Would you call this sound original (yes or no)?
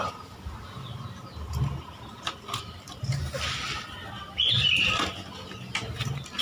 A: no